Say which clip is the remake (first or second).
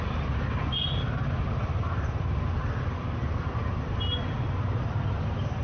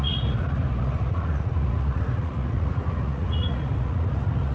second